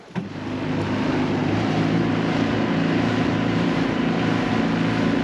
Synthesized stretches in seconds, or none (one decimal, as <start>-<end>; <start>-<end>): 1.4-4.5